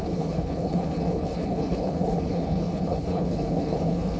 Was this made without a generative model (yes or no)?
no